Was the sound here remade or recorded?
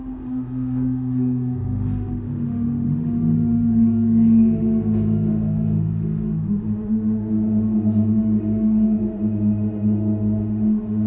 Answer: remade